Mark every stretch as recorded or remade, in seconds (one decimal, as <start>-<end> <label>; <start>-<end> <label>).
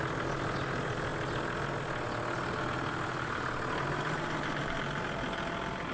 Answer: 0.0-5.9 recorded